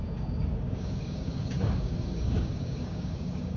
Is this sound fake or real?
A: fake